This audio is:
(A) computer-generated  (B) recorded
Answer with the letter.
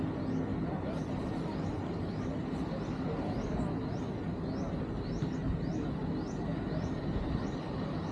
B